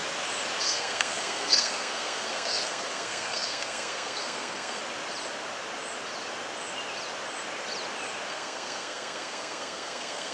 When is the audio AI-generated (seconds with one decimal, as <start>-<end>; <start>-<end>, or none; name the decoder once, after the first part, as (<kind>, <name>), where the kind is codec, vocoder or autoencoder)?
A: 0.6-4.8 (codec, SNAC); 8.3-10.3